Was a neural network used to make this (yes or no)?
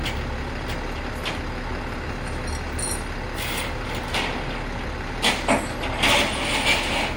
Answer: no